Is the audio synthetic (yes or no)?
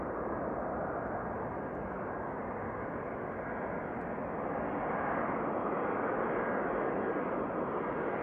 no